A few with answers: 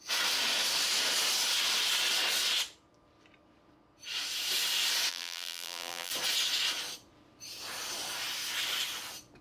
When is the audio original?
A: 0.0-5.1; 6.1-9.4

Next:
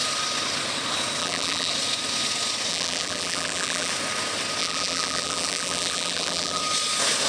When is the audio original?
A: 0.0-1.2; 1.7-2.7; 3.9-4.6; 6.6-7.3

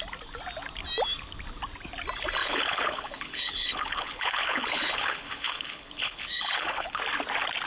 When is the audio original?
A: 0.0-2.4; 7.0-7.7